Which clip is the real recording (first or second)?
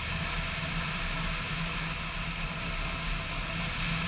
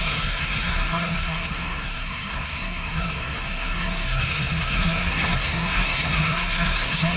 first